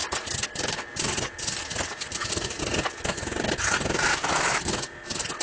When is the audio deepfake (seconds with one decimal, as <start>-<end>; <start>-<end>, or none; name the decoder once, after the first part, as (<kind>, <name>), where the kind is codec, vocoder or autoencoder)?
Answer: 4.1-4.7 (autoencoder, DAC-VAE)